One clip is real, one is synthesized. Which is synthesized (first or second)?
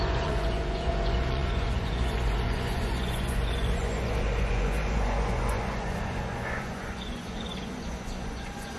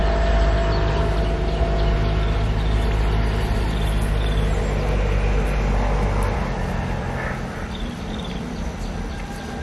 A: first